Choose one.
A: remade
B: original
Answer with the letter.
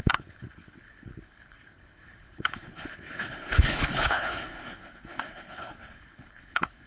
A